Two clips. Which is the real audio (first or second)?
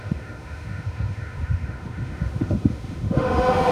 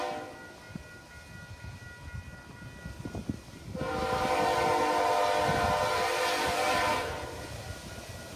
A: second